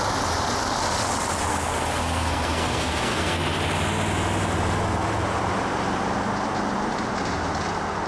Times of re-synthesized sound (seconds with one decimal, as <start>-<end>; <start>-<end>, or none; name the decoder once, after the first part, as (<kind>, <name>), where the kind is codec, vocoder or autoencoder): 1.5-3.4 (codec, SNAC)